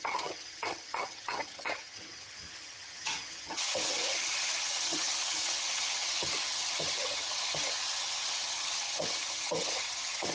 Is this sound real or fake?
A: fake